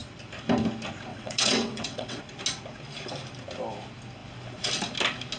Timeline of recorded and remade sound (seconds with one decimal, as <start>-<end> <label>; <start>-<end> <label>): 0.0-1.1 recorded; 1.1-2.2 remade; 2.2-5.4 recorded